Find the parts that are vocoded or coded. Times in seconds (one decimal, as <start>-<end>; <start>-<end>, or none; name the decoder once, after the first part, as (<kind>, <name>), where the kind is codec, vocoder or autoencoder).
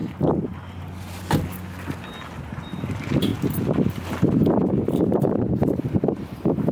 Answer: 2.4-3.3 (vocoder, BigVGAN v2); 3.9-6.7